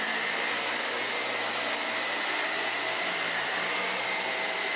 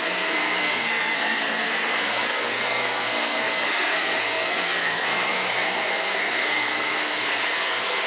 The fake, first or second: second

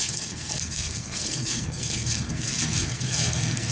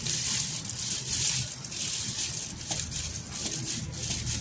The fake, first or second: first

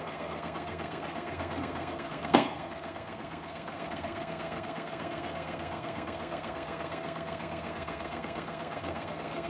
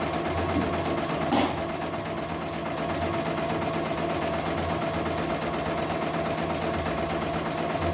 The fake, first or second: first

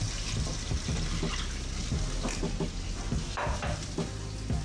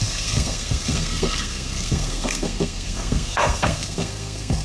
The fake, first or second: second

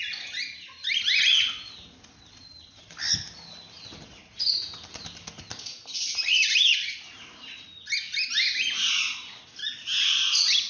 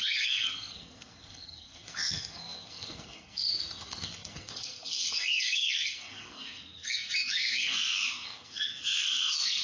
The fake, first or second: second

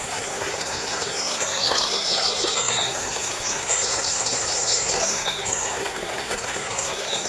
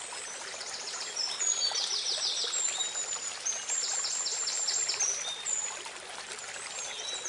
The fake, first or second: first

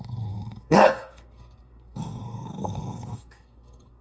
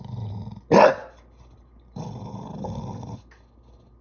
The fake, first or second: first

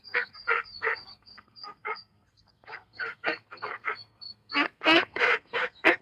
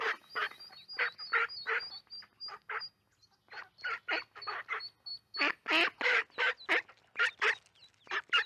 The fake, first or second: first